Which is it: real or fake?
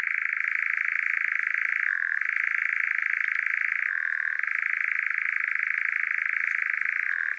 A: real